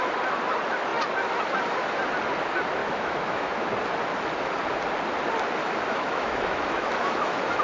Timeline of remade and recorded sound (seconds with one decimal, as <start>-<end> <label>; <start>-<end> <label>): 0.0-2.8 recorded; 2.8-3.7 remade; 3.7-5.6 recorded; 5.6-7.6 remade